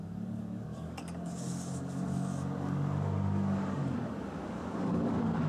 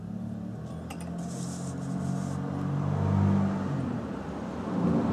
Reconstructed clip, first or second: first